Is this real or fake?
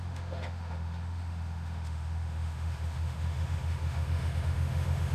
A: fake